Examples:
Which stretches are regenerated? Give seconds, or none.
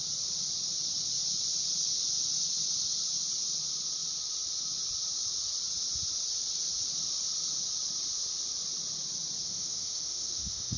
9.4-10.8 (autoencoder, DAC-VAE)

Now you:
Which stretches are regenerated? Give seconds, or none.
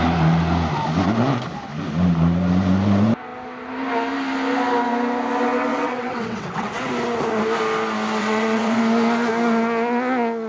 5.7-6.9 (vocoder, WaveNeXt); 8.2-8.8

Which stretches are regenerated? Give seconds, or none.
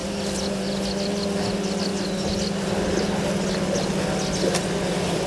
none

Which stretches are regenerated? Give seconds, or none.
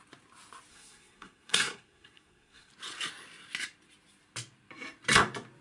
0.7-2.7 (codec, SNAC)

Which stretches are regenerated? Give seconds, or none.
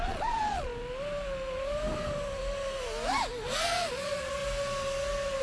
0.0-0.7 (vocoder, Vocos); 3.9-4.4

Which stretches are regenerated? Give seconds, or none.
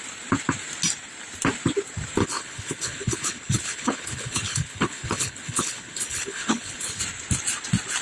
2.2-7.0 (codec, HILCodec)